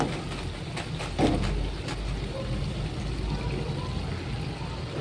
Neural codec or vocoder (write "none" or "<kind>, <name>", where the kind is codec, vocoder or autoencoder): none